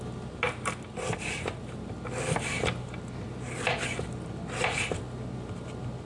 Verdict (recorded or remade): recorded